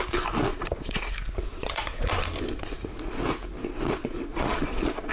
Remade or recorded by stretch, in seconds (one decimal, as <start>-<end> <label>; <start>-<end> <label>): 0.0-0.5 recorded; 0.5-1.1 remade; 1.1-1.5 recorded; 1.5-2.1 remade; 2.1-4.0 recorded; 4.0-5.1 remade